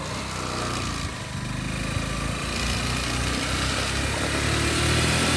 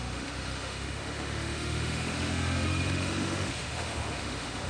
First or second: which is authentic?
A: first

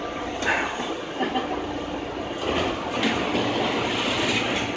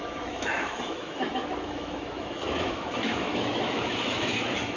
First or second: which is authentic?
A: first